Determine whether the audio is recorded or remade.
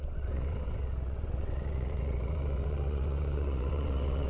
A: remade